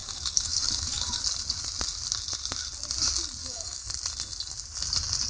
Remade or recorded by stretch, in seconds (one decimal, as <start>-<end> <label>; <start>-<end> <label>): 0.0-1.2 remade; 1.2-3.4 recorded; 3.4-3.9 remade; 3.9-5.3 recorded